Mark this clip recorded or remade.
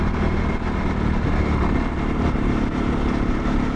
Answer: recorded